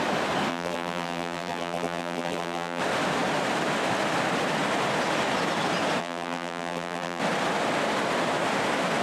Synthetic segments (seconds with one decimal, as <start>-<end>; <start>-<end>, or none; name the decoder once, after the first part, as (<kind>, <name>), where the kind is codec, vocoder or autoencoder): 0.5-2.8 (vocoder, BigVGAN v2); 6.0-7.2